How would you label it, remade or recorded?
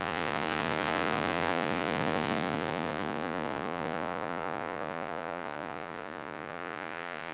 remade